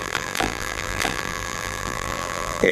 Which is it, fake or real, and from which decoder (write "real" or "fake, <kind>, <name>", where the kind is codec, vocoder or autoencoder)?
fake, vocoder, BigVGAN v2